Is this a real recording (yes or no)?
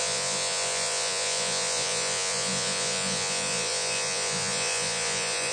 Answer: no